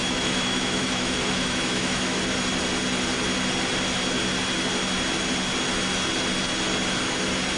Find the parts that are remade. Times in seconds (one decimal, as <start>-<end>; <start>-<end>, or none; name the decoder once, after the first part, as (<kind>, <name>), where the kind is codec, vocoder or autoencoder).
0.0-2.2 (autoencoder, DAC-VAE)